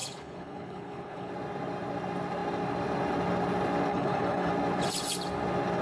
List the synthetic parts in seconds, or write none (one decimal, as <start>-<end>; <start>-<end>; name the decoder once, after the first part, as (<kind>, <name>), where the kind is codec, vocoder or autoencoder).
0.0-1.3 (codec, HILCodec); 3.9-4.5